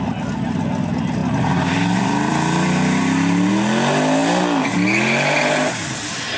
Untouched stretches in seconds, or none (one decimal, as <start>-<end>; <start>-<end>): 0.0-1.2; 3.5-6.4